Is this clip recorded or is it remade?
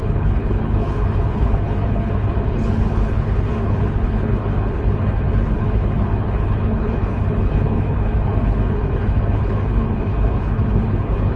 remade